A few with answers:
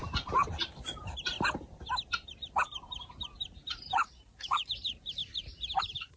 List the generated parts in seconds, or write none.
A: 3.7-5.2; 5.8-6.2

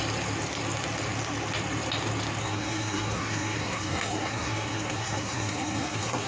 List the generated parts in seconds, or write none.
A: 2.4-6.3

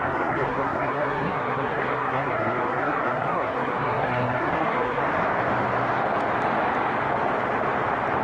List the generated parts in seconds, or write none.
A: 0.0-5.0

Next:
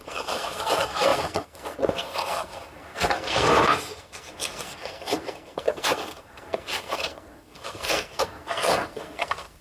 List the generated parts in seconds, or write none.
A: 0.0-9.6

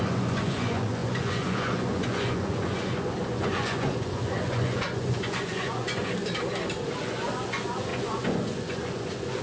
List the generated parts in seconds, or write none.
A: 0.0-6.0; 7.0-9.4

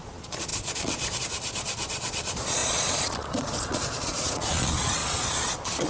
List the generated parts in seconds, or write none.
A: 0.0-5.9